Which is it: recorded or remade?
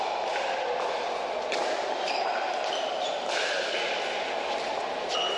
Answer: recorded